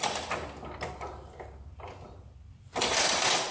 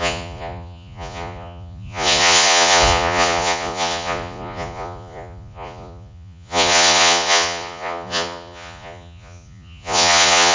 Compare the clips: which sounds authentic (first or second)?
first